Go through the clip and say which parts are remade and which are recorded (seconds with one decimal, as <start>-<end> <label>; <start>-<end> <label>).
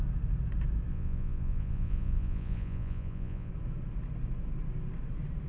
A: 0.0-0.9 recorded; 0.9-3.5 remade; 3.5-5.5 recorded